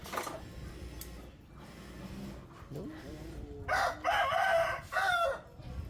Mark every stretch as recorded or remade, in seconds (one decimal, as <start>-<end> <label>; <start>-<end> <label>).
0.0-5.9 recorded